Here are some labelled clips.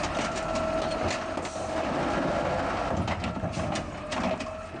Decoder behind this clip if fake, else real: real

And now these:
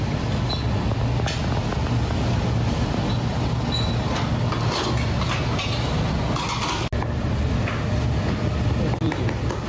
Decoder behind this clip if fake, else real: real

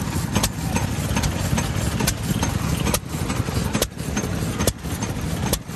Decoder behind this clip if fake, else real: real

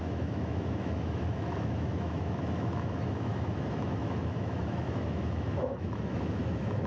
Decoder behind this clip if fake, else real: fake, autoencoder, DAC-VAE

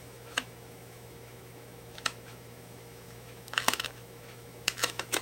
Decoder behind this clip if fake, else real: fake, autoencoder, DAC-VAE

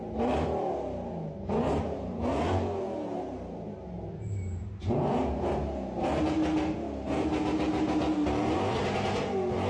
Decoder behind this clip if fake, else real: real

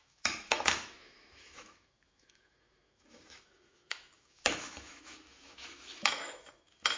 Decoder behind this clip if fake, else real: fake, autoencoder, DAC-VAE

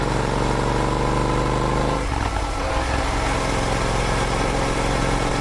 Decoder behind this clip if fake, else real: real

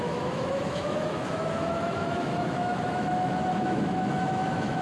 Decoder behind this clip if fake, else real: fake, autoencoder, DAC-VAE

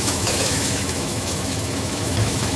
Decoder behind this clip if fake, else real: fake, autoencoder, DAC-VAE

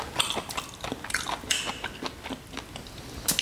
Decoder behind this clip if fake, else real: real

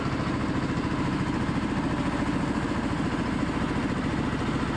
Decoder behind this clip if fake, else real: real